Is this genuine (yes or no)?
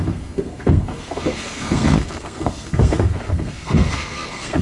no